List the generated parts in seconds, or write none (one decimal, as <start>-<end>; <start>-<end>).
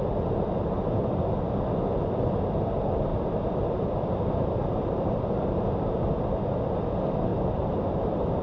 7.3-8.4